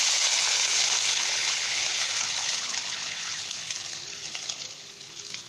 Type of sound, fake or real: fake